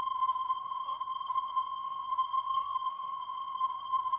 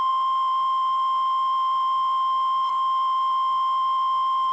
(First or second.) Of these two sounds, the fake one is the first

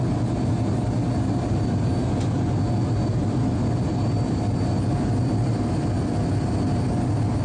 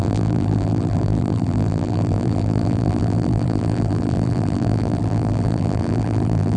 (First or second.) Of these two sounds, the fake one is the second